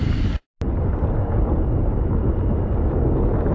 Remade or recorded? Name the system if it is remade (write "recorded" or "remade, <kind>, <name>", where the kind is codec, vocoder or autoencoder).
recorded